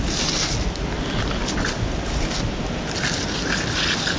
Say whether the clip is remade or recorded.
recorded